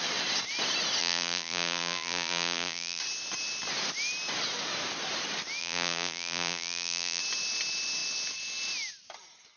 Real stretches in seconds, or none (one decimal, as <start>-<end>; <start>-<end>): 0.0-1.0; 3.0-5.6; 7.2-9.6